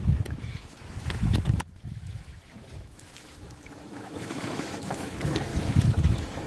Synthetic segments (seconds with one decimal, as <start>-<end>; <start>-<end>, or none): 0.0-6.5